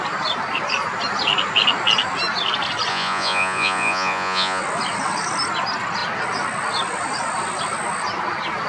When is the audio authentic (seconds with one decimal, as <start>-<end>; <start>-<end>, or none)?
0.0-2.9; 4.6-8.7